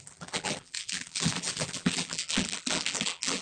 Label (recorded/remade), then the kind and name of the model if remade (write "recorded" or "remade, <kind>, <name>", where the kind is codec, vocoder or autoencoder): remade, vocoder, BigVGAN v2